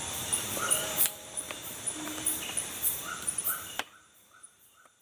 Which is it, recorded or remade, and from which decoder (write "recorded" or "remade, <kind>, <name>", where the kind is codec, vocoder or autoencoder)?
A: remade, vocoder, BigVGAN v2